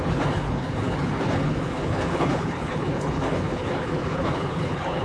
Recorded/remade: remade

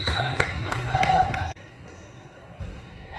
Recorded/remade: remade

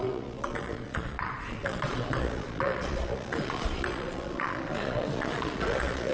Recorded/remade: remade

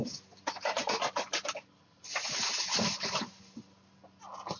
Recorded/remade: recorded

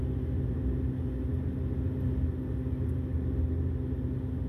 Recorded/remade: recorded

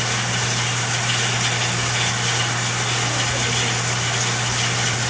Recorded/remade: recorded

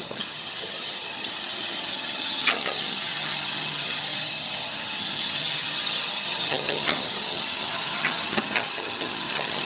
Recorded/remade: remade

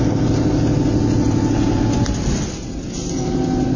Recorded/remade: recorded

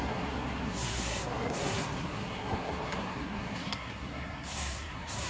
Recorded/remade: remade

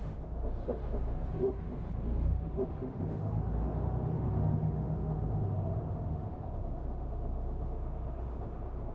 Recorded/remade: remade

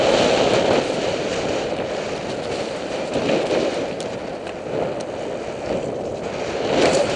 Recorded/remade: recorded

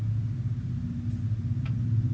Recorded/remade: recorded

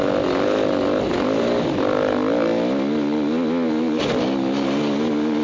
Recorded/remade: recorded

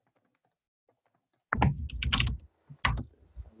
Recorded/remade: recorded